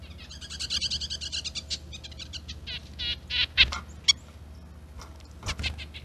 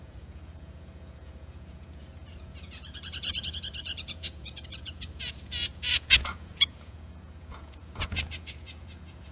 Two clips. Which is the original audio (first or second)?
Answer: first